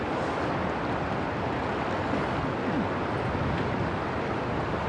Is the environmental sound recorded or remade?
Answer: recorded